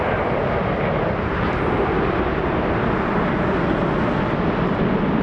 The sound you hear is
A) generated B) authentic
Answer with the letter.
B